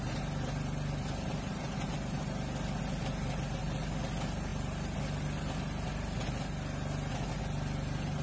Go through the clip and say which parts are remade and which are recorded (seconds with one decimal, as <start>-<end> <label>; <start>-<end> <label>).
0.0-8.2 recorded